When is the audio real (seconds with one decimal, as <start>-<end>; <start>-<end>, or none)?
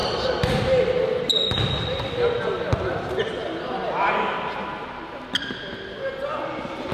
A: 0.0-6.9